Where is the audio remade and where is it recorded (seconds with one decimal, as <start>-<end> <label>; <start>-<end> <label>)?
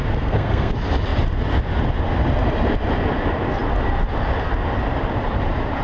0.0-0.7 remade; 0.7-5.8 recorded